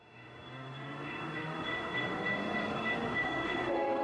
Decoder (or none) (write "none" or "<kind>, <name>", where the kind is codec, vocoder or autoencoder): autoencoder, DAC-VAE